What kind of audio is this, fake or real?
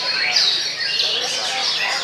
real